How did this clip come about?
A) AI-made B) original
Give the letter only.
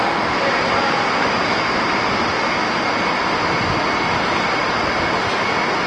B